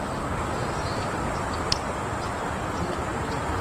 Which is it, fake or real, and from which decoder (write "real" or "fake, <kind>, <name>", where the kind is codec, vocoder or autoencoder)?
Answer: real